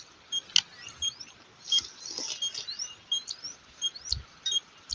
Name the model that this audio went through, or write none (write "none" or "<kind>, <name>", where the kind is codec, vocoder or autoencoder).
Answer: none